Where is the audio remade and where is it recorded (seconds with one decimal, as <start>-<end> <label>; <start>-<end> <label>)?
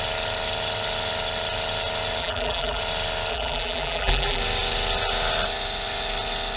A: 0.0-2.2 recorded; 2.2-2.8 remade; 2.8-3.3 recorded; 3.3-4.4 remade; 4.4-6.6 recorded